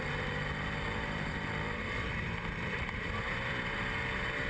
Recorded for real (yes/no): no